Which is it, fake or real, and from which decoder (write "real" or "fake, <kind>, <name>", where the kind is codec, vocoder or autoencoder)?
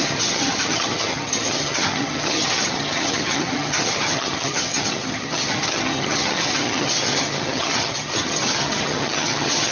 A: fake, vocoder, HiFi-GAN